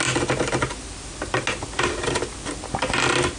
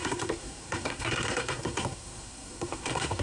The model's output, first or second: second